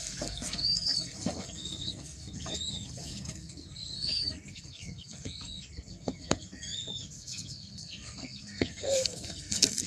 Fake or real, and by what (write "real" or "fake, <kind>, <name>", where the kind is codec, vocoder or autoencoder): fake, codec, SNAC